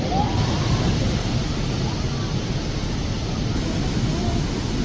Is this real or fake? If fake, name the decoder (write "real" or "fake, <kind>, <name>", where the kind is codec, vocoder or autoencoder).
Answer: real